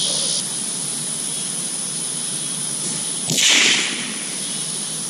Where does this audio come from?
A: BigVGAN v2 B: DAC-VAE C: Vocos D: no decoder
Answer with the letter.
D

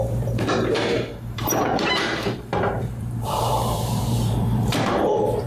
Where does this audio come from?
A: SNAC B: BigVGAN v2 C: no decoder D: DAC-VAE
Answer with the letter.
B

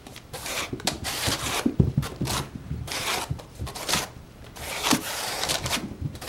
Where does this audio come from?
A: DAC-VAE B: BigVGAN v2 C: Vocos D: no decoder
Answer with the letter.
B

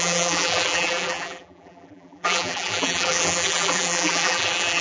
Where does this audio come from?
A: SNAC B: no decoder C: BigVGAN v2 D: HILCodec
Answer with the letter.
C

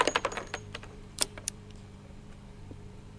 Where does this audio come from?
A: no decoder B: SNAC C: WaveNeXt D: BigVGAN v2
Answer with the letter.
D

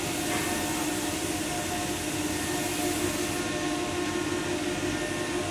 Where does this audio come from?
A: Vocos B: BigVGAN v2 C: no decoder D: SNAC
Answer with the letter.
C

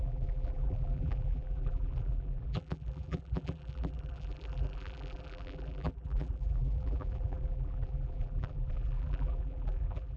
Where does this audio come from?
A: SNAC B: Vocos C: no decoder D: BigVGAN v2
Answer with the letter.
D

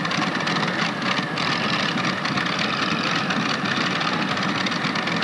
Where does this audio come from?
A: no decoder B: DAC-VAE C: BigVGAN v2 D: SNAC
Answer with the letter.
C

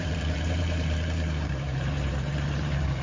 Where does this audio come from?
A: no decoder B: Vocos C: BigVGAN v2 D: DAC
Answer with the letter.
C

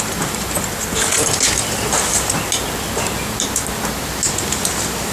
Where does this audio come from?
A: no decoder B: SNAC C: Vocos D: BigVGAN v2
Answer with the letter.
A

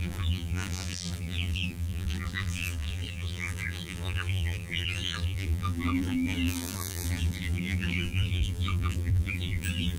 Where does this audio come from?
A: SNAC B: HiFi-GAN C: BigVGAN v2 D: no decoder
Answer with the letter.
C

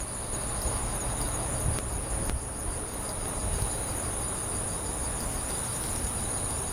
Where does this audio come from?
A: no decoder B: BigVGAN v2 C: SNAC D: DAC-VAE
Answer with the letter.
A